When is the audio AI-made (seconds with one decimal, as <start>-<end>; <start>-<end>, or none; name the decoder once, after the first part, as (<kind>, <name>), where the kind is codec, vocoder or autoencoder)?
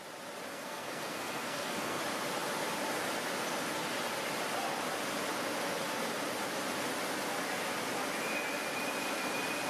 0.5-2.0 (codec, SNAC)